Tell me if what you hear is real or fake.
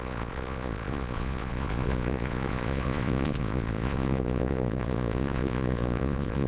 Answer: fake